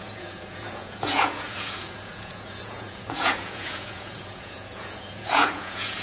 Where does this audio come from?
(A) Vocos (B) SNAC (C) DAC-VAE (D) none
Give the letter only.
A